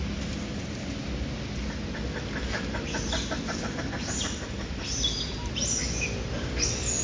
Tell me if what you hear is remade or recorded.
recorded